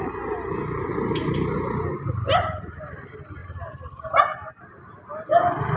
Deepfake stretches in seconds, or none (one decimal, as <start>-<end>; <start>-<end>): 3.4-4.2